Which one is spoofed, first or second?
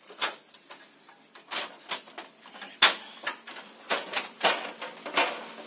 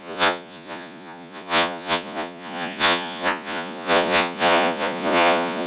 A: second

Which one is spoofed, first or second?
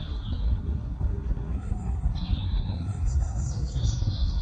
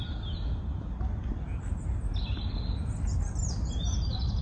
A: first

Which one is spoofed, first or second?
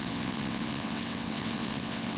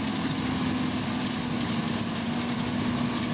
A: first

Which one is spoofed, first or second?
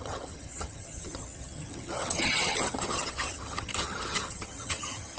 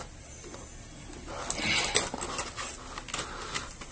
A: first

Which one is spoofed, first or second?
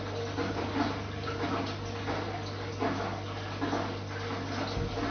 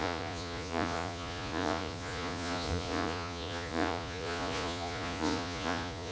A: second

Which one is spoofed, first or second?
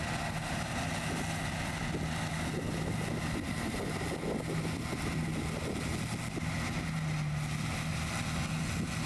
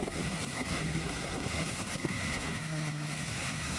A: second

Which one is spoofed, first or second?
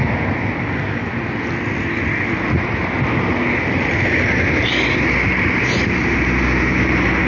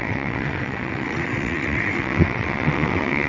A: second